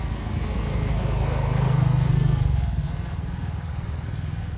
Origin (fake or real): fake